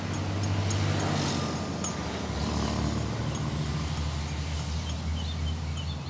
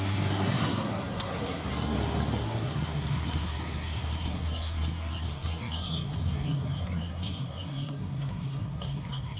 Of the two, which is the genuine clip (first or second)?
first